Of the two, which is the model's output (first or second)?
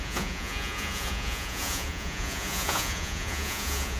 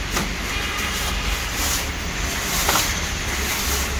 first